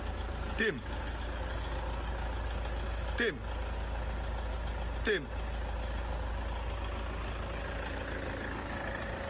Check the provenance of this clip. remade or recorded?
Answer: recorded